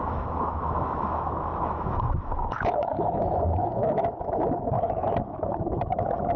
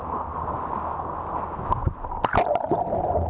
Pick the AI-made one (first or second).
first